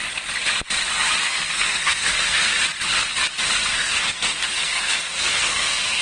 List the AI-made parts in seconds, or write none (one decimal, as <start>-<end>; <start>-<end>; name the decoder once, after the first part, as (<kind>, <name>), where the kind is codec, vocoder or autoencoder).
1.2-2.5 (codec, SNAC); 3.7-6.0